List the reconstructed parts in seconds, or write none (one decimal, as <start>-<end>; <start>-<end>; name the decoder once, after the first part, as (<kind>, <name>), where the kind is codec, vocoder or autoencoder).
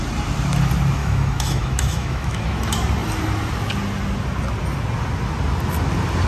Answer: 1.0-2.6 (autoencoder, DAC-VAE)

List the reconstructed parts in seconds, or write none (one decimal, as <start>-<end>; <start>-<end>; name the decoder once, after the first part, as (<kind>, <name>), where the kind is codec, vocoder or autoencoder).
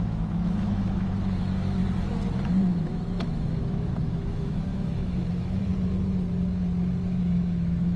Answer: 0.0-1.8 (autoencoder, DAC-VAE); 2.8-5.7; 7.2-8.0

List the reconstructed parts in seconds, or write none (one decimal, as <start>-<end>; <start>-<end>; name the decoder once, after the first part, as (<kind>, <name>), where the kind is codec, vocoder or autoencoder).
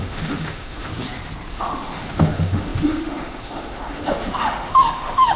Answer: 0.0-0.9 (autoencoder, DAC-VAE); 1.5-5.4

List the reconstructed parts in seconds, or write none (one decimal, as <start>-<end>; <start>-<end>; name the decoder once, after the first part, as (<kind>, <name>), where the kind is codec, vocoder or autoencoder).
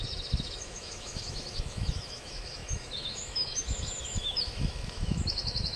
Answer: 0.0-5.8 (autoencoder, DAC-VAE)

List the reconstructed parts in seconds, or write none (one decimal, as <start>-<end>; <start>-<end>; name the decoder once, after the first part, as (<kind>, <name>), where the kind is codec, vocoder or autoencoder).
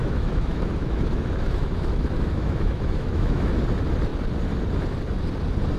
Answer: 0.0-3.5 (autoencoder, DAC-VAE)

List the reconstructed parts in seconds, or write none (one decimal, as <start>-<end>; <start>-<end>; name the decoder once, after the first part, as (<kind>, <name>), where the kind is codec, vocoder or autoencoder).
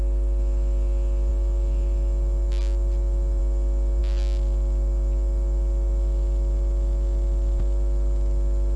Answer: none